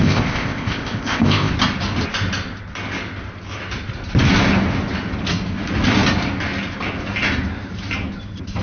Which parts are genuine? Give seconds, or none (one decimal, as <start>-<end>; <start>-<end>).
1.5-8.6